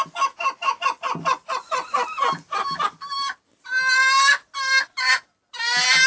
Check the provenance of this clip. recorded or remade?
recorded